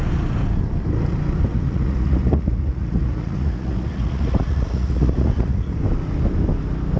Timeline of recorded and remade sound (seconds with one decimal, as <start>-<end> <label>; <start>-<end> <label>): 0.0-1.5 recorded; 1.5-5.7 remade; 5.7-7.0 recorded